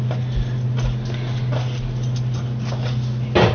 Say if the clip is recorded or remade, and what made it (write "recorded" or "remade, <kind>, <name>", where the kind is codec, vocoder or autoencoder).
recorded